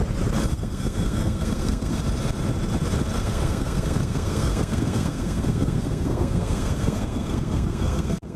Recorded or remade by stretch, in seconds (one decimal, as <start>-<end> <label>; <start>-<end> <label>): 0.0-0.5 recorded; 0.5-2.0 remade; 2.0-3.2 recorded; 3.2-8.4 remade